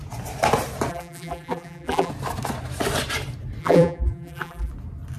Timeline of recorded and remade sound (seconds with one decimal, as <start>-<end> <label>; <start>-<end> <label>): 0.0-0.9 recorded; 0.9-2.1 remade; 2.1-3.6 recorded; 3.6-4.7 remade; 4.7-5.2 recorded